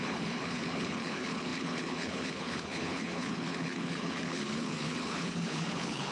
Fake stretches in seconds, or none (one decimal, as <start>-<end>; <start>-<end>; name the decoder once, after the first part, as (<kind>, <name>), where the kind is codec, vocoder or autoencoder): 0.0-6.1 (codec, HILCodec)

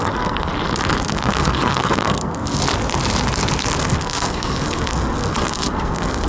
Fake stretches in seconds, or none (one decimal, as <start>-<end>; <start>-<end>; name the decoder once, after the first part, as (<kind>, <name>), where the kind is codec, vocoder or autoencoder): 0.0-0.5 (codec, SNAC); 1.1-2.6; 3.8-6.3